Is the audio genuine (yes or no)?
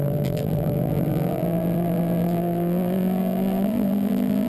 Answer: no